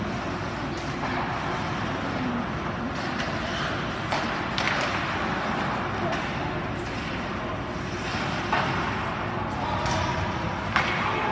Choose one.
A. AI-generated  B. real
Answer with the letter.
B